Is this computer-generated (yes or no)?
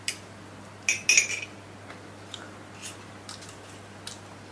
no